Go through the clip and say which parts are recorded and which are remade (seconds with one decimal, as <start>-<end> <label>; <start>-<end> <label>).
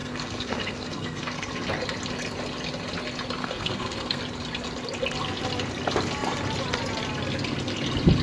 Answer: 0.0-1.5 remade; 1.5-3.4 recorded; 3.4-4.2 remade; 4.2-8.2 recorded